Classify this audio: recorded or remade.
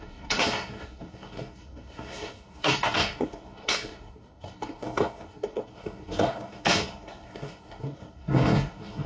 remade